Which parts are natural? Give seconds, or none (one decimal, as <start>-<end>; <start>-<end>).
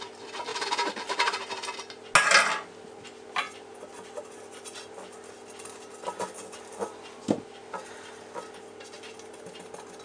0.0-10.0